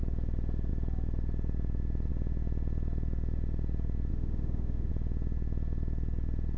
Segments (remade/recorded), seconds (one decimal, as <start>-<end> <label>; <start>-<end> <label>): 0.0-4.1 recorded; 4.1-4.9 remade; 4.9-6.6 recorded